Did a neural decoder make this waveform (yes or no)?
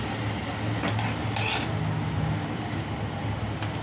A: no